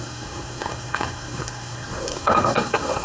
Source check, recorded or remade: remade